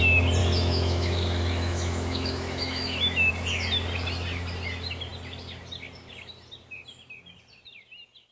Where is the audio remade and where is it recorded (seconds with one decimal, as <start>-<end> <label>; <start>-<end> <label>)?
0.0-0.4 recorded; 0.4-3.3 remade; 3.3-8.3 recorded